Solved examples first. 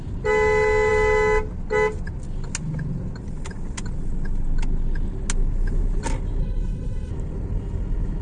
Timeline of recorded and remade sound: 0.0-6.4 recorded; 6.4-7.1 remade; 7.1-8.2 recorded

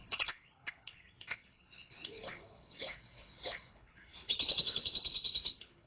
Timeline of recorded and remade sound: 0.0-5.9 remade

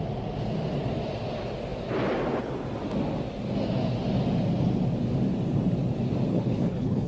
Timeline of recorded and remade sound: 0.0-6.3 recorded; 6.3-7.1 remade

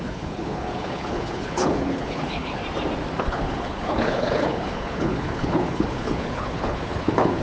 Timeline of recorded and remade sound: 0.0-2.6 remade; 2.6-3.2 recorded; 3.2-7.4 remade

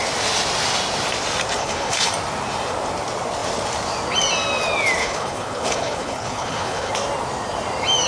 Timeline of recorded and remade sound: 0.0-1.6 recorded; 1.6-2.1 remade; 2.1-5.0 recorded; 5.0-6.9 remade; 6.9-8.1 recorded

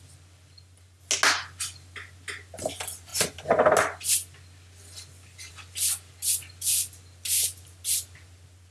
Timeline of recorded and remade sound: 0.0-8.7 recorded

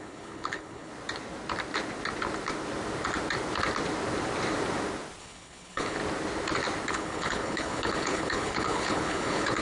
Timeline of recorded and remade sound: 0.0-0.9 remade; 0.9-5.2 recorded; 5.2-6.0 remade; 6.0-6.9 recorded; 6.9-9.6 remade